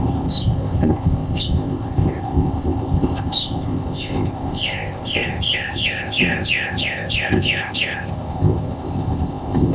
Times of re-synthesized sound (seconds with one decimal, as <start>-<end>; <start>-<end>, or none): 0.0-9.7